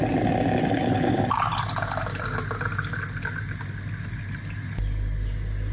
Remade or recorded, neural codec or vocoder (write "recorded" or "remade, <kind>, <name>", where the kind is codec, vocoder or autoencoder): recorded